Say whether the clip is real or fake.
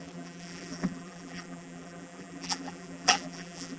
fake